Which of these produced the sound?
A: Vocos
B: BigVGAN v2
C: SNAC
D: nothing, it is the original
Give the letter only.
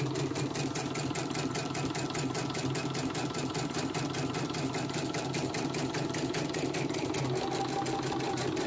D